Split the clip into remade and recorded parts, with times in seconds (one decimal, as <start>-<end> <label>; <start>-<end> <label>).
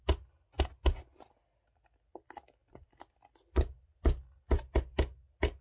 0.0-5.6 recorded